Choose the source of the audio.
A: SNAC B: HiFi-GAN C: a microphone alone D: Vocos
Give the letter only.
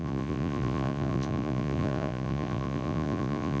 D